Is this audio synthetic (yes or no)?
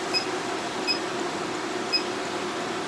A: no